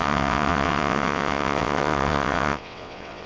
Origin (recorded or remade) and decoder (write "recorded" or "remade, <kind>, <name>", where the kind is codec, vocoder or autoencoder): remade, vocoder, WaveNeXt